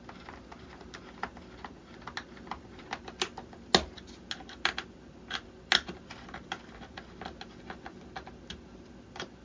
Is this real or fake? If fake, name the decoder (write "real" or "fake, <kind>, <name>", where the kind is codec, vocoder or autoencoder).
real